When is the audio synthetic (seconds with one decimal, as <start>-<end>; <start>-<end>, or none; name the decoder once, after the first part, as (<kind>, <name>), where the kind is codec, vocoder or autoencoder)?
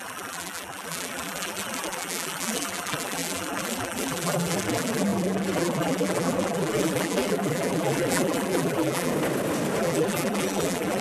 0.0-9.1 (vocoder, BigVGAN v2); 9.8-11.0